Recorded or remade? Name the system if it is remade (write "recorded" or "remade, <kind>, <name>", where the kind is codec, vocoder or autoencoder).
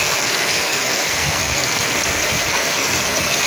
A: remade, codec, SNAC